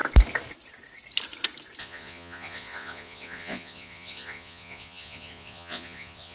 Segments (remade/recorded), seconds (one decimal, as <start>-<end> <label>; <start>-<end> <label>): 0.0-1.8 recorded; 1.8-6.3 remade